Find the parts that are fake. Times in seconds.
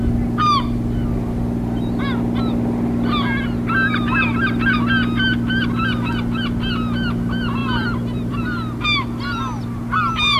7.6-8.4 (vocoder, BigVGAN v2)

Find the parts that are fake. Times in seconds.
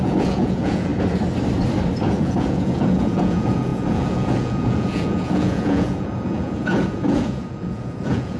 0.0-0.9 (vocoder, Vocos); 2.1-8.4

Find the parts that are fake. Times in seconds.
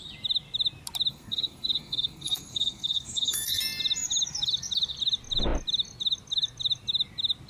1.1-3.6 (codec, SNAC)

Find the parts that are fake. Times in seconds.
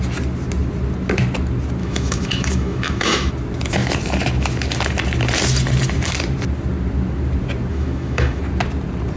1.8-3.3 (autoencoder, DAC-VAE); 7.7-8.4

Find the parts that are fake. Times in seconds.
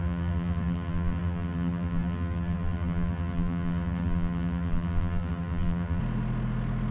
0.0-6.0 (vocoder, BigVGAN v2)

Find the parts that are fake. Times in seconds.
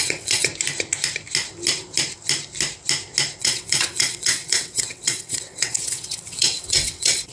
0.0-0.5 (vocoder, WaveNeXt); 3.4-7.3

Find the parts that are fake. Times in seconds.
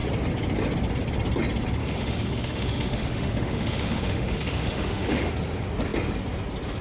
1.8-5.3 (autoencoder, DAC-VAE)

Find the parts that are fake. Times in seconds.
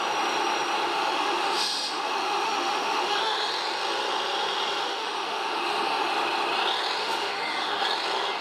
0.9-3.5 (autoencoder, DAC-VAE); 4.8-6.1; 7.0-7.8